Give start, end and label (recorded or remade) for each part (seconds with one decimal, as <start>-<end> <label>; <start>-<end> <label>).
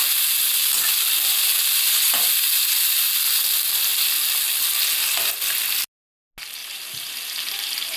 0.0-6.6 recorded; 6.6-8.0 remade